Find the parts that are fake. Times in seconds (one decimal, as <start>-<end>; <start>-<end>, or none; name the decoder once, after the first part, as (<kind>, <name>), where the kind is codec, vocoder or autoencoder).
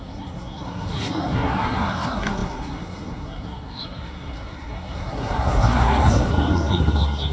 0.0-7.3 (codec, SNAC)